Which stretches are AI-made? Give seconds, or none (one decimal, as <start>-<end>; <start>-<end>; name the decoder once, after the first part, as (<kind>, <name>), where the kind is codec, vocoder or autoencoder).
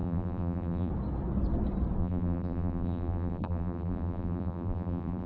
0.0-0.9 (vocoder, BigVGAN v2); 2.0-5.3